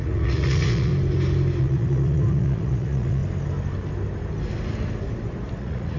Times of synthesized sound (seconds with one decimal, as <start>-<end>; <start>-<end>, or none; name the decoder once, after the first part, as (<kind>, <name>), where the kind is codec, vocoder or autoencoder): 0.0-0.9 (vocoder, Vocos); 1.6-3.2; 5.6-6.0